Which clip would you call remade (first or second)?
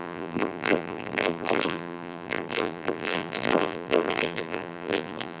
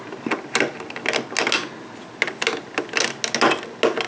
first